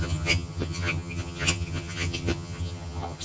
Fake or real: fake